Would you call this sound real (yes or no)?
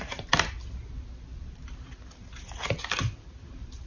yes